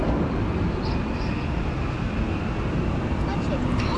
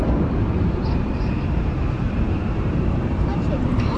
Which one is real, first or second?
first